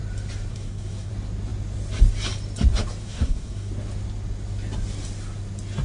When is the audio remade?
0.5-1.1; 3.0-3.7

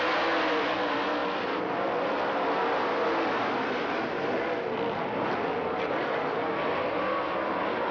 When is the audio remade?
none